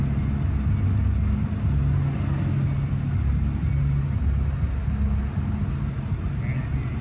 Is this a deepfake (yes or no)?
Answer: no